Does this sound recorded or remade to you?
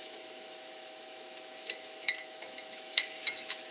remade